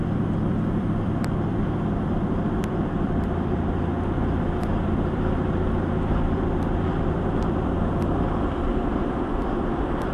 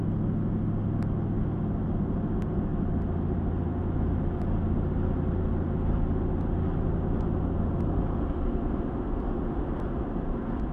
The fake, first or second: first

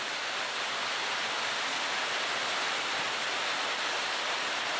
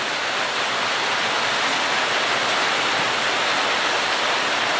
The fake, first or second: first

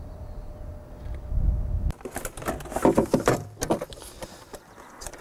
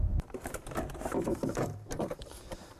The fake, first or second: second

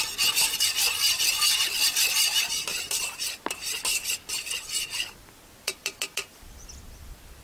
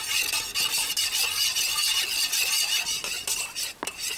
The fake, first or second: first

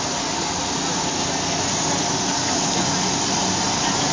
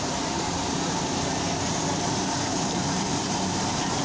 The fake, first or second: second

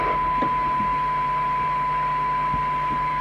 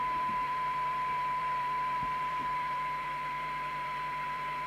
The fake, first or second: second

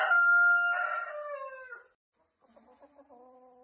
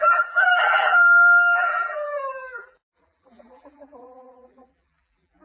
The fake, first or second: second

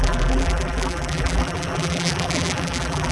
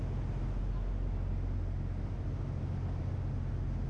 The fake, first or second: first